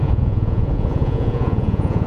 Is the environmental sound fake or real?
fake